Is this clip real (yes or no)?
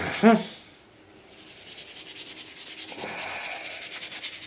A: yes